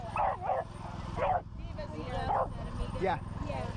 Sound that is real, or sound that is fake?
real